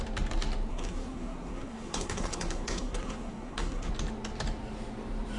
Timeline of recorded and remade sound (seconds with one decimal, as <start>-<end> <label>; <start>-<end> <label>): 0.0-0.7 recorded; 0.7-3.9 remade; 3.9-5.4 recorded